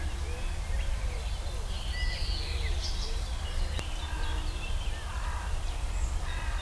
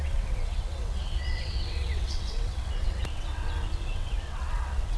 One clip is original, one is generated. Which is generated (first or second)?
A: second